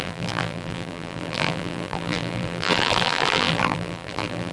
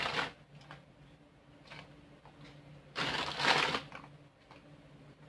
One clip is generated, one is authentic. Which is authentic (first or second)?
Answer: second